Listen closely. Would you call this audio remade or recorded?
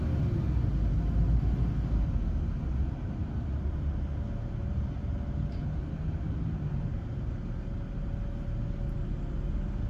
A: recorded